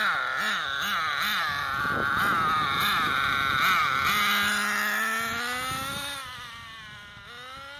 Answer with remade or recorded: recorded